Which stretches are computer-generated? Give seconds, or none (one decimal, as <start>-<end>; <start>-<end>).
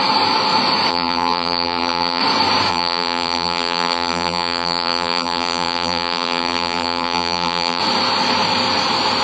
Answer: 0.9-2.2; 2.7-7.8